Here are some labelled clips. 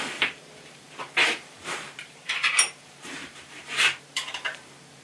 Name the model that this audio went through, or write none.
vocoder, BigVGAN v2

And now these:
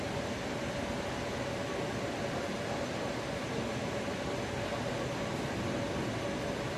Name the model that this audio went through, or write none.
none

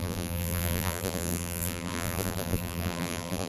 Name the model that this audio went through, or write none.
vocoder, BigVGAN v2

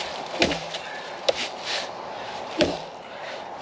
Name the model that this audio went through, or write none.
vocoder, BigVGAN v2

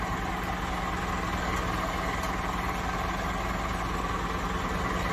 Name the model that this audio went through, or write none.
none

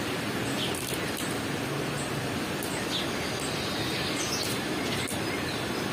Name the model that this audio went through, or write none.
none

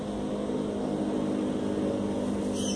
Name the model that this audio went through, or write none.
none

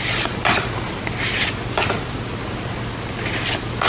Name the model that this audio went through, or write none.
none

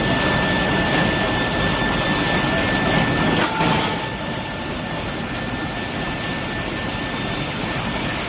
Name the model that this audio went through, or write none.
none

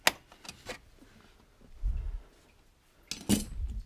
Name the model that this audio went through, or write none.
none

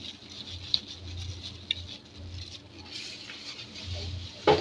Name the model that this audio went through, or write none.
none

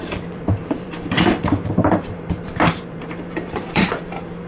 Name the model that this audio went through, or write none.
vocoder, BigVGAN v2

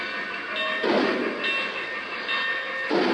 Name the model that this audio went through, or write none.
none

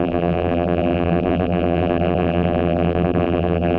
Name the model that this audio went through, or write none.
vocoder, BigVGAN v2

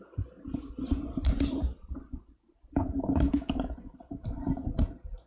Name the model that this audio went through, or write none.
vocoder, BigVGAN v2